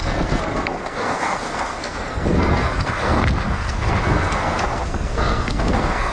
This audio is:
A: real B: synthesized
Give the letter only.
B